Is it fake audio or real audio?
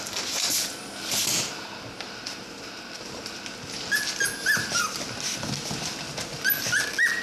real